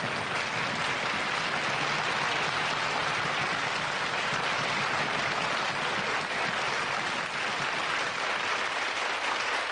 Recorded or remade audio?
recorded